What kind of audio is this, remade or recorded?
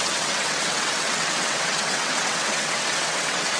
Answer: remade